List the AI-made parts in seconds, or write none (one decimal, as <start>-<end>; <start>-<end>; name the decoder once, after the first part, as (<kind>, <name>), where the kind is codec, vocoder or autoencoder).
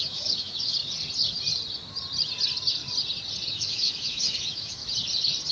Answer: 0.0-0.8 (autoencoder, DAC-VAE); 3.5-4.8